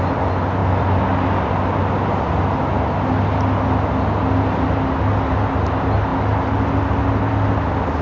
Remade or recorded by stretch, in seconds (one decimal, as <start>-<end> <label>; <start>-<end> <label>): 0.0-8.0 recorded